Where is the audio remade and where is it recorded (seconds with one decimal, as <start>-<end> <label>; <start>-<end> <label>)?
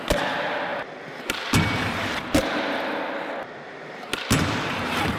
0.0-5.2 recorded